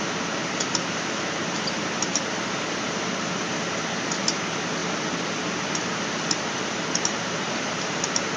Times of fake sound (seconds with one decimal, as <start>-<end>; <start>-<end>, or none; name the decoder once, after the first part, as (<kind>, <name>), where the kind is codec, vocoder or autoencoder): 0.0-8.4 (vocoder, BigVGAN v2)